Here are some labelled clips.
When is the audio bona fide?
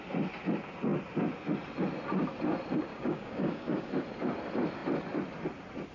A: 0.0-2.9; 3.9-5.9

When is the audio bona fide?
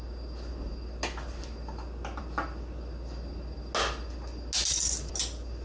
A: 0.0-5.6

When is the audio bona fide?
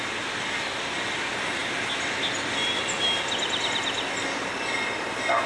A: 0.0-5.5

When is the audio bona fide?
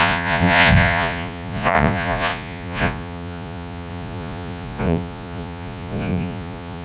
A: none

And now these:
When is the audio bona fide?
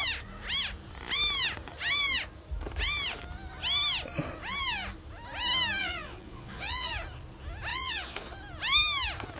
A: 0.0-5.8; 6.9-7.7; 8.3-9.4